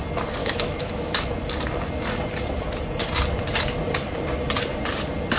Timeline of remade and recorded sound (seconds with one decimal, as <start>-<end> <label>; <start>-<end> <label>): 0.0-0.4 recorded; 0.4-1.3 remade; 1.3-5.4 recorded